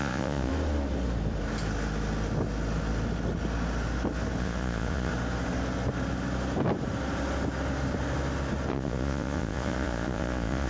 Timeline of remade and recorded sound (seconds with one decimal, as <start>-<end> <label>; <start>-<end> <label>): 0.0-0.5 remade; 0.5-4.4 recorded; 4.4-5.1 remade; 5.1-8.7 recorded; 8.7-10.7 remade